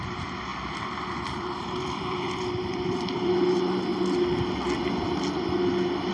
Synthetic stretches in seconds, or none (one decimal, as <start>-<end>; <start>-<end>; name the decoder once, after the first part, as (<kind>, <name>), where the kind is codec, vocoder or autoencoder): 0.0-3.9 (vocoder, BigVGAN v2)